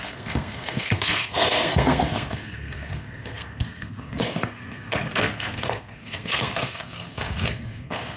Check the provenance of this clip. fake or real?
fake